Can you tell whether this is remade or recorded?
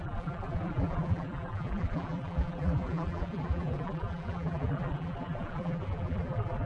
remade